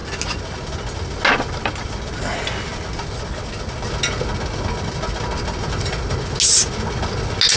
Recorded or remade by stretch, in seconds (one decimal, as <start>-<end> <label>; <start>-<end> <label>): 0.0-7.6 recorded